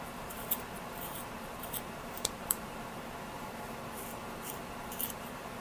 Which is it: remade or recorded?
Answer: remade